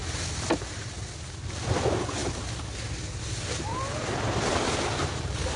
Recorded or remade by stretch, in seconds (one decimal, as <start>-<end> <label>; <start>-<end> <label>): 0.0-4.5 recorded; 4.5-5.6 remade